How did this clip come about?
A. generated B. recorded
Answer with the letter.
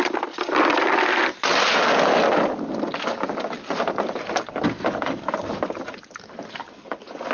B